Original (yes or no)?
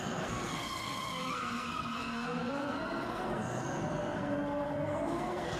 no